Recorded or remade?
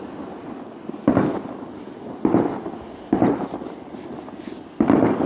recorded